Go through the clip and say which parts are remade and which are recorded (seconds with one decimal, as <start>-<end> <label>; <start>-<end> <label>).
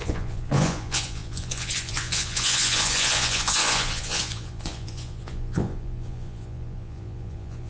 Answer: 0.0-7.7 remade